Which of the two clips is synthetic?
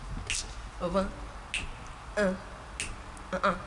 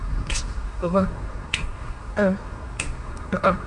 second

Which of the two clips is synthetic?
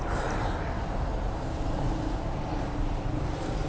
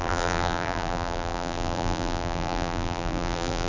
second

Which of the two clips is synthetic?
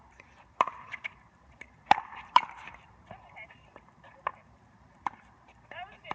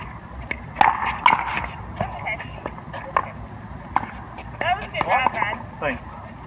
first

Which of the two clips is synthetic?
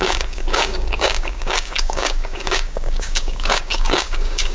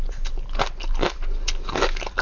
first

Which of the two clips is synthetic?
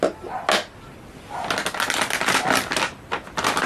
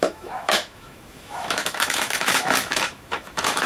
second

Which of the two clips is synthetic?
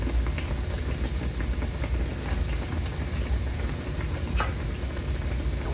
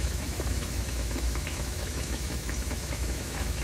second